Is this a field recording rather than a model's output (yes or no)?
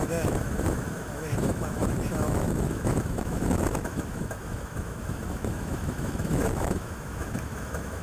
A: no